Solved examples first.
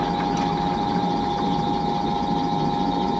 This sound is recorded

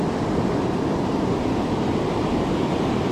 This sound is remade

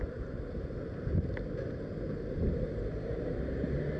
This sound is recorded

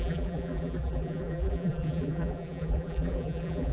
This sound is remade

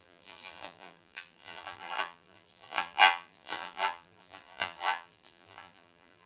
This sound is remade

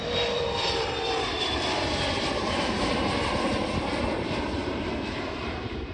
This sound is remade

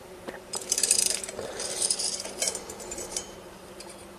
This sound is remade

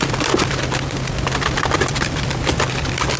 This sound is remade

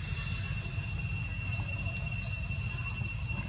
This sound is recorded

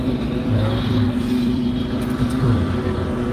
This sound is remade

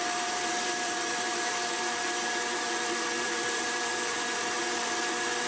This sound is remade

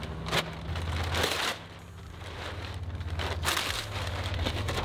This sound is recorded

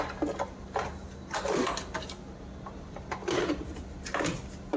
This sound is recorded